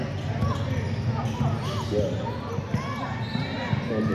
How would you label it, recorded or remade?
recorded